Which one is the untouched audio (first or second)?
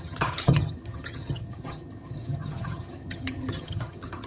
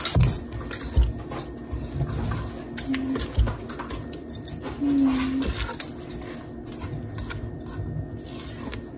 second